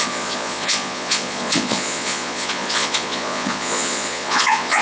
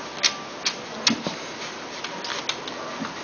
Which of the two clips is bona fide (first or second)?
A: second